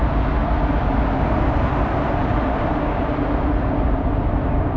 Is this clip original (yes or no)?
yes